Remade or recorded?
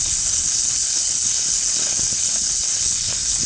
remade